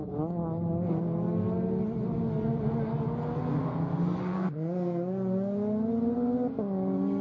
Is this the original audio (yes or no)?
yes